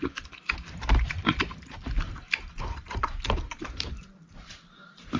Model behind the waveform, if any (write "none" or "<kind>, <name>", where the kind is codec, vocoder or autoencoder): none